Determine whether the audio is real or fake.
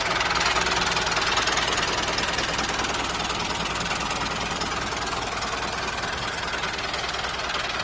real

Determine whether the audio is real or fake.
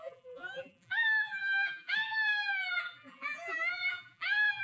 fake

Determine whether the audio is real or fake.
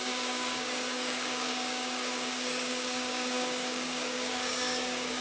fake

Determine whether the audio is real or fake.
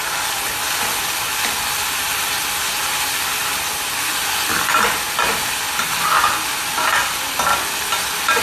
real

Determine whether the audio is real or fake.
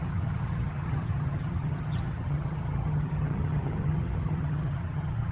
fake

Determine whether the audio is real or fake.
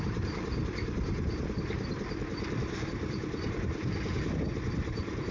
fake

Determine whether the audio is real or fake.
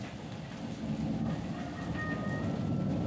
real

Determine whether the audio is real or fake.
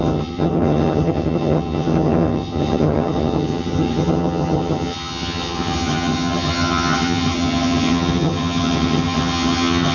fake